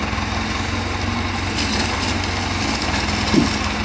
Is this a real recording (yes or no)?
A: yes